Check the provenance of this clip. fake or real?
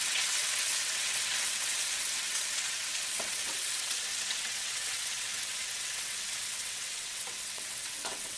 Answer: fake